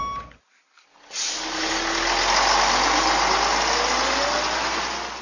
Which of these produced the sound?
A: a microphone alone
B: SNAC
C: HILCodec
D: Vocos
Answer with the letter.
A